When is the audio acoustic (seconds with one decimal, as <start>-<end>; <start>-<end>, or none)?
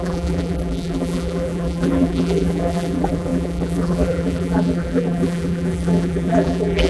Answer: none